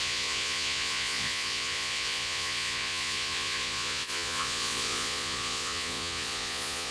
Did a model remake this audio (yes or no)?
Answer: yes